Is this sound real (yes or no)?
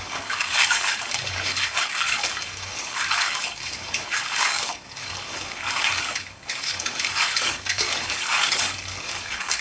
no